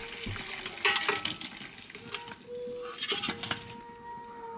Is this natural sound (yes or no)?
yes